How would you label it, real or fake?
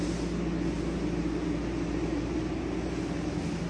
real